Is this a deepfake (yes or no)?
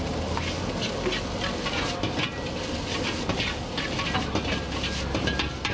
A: no